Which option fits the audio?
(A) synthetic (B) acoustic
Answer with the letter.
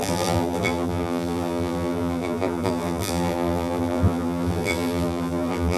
A